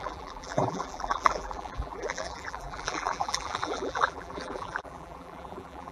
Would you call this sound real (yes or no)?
no